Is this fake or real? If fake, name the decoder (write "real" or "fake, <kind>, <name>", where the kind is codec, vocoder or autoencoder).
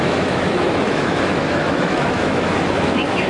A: fake, autoencoder, DAC-VAE